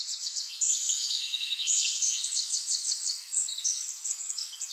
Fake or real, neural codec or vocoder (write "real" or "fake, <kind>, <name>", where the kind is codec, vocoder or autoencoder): fake, codec, SNAC